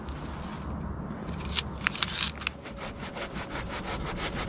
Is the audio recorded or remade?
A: recorded